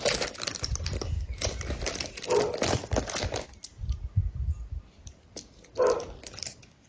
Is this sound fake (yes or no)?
no